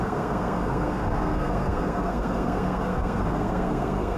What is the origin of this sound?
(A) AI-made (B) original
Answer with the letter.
A